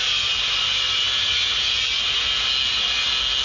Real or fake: real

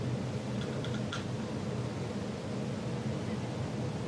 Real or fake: real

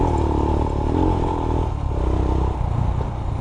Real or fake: real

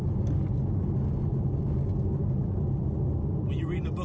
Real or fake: real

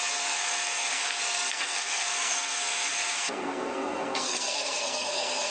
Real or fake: fake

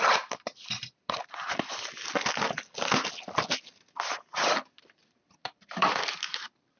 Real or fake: real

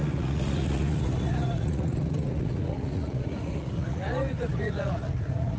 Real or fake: fake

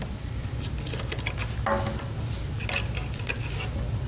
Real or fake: real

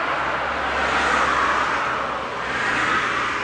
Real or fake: real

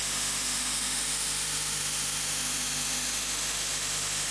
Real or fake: fake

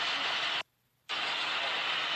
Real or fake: real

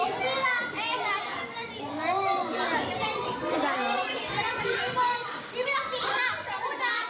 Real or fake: real